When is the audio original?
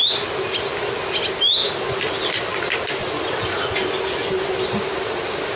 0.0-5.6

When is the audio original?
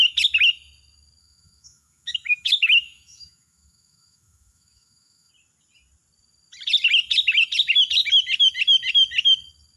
0.0-1.2; 5.3-9.8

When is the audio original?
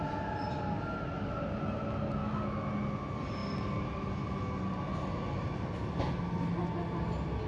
0.0-2.2; 2.7-7.5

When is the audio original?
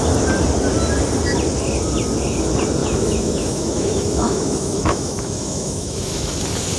0.0-2.8; 6.3-6.8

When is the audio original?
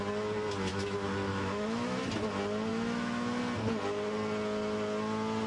0.0-0.7; 2.0-2.7; 3.4-5.5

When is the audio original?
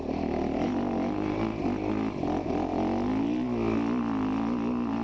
0.0-5.0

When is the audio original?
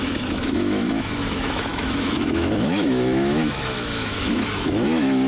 none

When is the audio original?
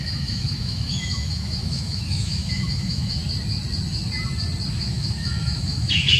3.2-4.7